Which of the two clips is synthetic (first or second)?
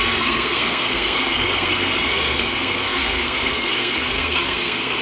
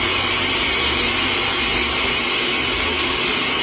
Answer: first